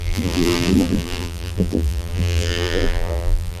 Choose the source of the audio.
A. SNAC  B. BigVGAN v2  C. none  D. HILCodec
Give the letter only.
B